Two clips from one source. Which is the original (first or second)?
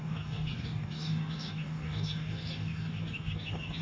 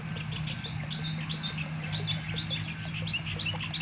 second